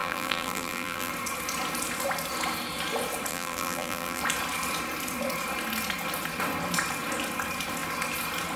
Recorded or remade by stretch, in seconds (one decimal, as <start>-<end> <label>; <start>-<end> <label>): 0.0-1.1 remade; 1.1-3.3 recorded; 3.3-4.2 remade; 4.2-8.6 recorded